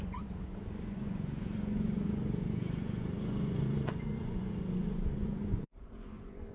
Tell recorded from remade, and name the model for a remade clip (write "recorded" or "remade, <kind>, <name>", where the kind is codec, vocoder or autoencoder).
remade, vocoder, Vocos